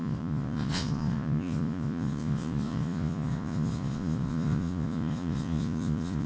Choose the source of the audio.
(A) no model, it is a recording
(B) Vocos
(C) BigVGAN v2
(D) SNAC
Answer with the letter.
B